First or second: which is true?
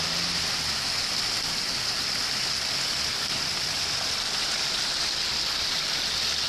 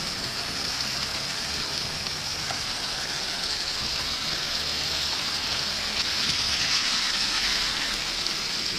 first